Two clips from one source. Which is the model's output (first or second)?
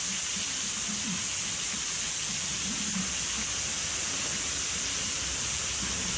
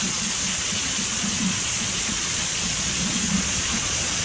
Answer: second